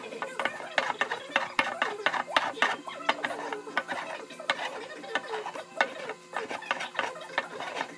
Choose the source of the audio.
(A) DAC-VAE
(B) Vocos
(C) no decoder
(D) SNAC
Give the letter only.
C